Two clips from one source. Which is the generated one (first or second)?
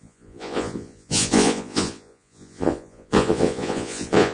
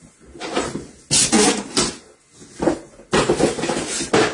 first